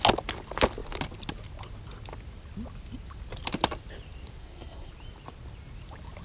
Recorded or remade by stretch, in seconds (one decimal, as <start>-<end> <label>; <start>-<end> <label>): 0.0-4.4 recorded; 4.4-4.9 remade; 4.9-6.2 recorded